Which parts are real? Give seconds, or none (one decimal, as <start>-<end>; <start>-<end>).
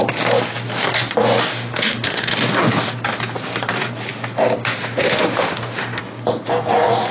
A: 0.0-1.5; 2.3-4.8; 6.0-7.1